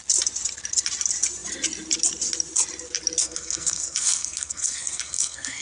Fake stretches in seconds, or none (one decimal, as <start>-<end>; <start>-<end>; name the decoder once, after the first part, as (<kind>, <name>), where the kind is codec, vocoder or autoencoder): 3.2-5.6 (codec, SNAC)